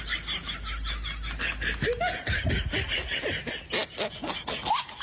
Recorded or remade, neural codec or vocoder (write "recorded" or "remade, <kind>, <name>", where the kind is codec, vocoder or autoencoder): recorded